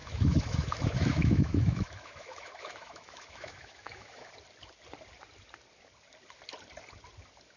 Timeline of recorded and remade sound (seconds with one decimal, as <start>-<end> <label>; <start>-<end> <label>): 0.0-4.3 remade; 4.3-7.6 recorded